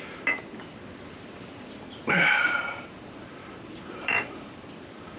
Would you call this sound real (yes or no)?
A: no